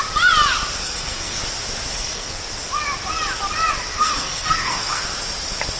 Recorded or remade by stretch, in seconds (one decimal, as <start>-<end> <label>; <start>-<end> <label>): 0.0-0.8 recorded; 0.8-1.4 remade; 1.4-1.9 recorded; 1.9-2.4 remade; 2.4-3.9 recorded; 3.9-5.0 remade; 5.0-5.8 recorded